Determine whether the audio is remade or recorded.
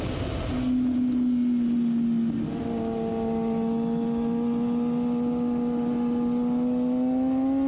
recorded